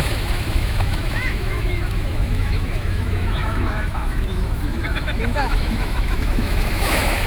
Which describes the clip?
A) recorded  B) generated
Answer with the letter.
B